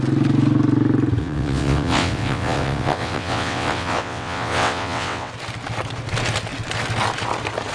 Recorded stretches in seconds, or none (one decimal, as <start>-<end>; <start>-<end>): 0.0-1.2; 5.3-7.7